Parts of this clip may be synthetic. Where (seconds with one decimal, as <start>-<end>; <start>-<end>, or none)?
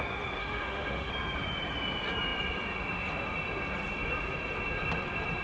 0.4-1.1